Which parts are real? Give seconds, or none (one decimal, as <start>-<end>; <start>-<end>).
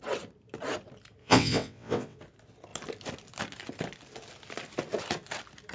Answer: 0.0-1.2; 2.2-5.7